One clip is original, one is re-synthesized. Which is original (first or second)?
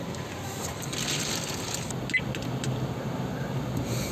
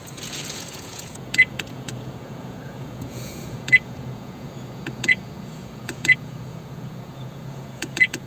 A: first